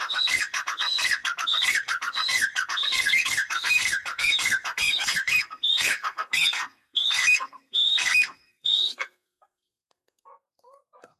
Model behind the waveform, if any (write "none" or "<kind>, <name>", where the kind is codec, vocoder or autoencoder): codec, SNAC